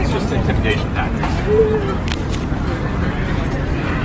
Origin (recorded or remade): remade